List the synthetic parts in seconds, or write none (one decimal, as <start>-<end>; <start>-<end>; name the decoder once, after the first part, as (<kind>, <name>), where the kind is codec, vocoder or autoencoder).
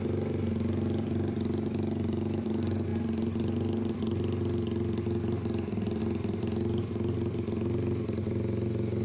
none